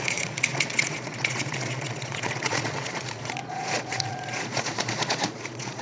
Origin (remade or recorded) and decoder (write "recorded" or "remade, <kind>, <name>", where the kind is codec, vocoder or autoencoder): remade, vocoder, Vocos